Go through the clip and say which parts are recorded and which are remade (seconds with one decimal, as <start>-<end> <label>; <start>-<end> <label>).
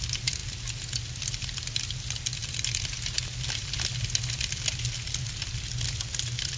0.0-6.6 recorded